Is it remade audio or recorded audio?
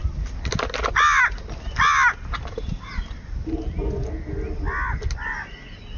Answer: recorded